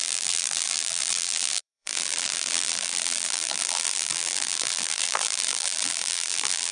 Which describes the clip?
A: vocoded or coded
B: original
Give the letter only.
A